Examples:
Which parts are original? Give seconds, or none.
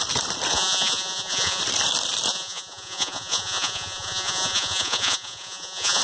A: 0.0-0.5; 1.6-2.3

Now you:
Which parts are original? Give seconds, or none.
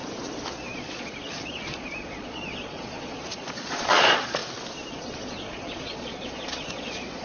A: 0.0-0.7; 4.4-4.9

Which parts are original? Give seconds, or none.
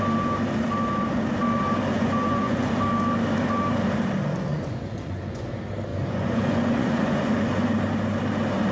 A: 0.0-1.9; 2.7-4.5; 5.5-5.9; 7.3-8.7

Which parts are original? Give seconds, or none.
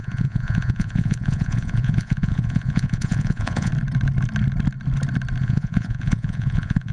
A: 3.7-5.4